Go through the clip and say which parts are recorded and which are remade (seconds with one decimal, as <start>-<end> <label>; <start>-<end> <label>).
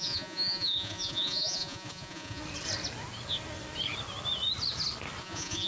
0.0-2.4 remade; 2.4-5.2 recorded; 5.2-5.7 remade